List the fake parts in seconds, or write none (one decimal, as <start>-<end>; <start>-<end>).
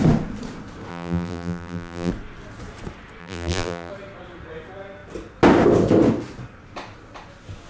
0.9-2.1; 3.2-3.9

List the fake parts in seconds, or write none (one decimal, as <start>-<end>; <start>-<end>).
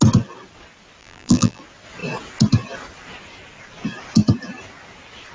1.0-1.6